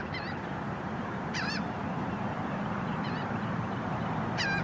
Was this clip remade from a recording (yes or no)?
yes